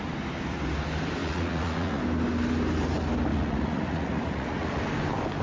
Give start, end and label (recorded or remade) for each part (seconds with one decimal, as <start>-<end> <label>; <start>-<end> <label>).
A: 0.0-1.2 recorded; 1.2-2.0 remade; 2.0-3.3 recorded; 3.3-4.8 remade; 4.8-5.4 recorded